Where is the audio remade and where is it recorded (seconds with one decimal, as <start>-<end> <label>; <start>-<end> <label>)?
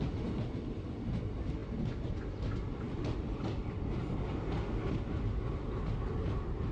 0.0-6.7 recorded